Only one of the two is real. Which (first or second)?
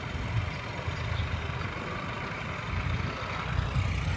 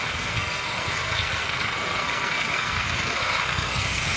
first